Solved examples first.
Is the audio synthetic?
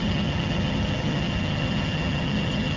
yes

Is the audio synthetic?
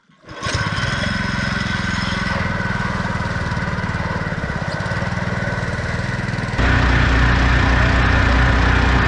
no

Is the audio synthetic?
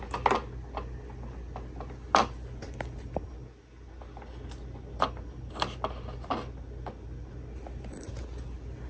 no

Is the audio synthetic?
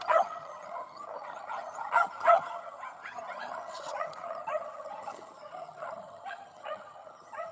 yes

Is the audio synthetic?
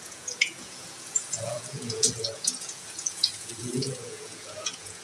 yes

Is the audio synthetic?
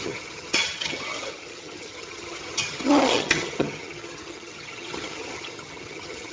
yes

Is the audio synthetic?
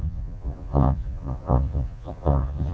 yes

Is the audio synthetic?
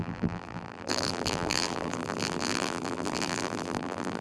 yes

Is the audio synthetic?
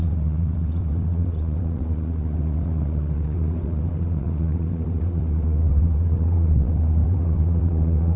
yes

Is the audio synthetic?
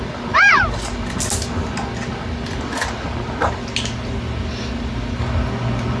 no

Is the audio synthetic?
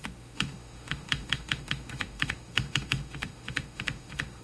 yes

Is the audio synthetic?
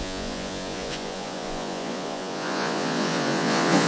yes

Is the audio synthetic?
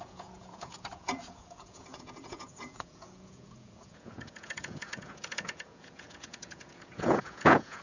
yes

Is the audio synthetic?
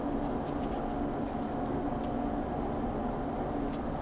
no